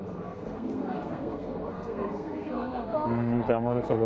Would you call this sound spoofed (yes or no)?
yes